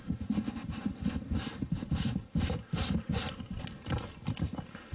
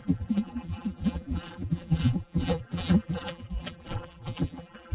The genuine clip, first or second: first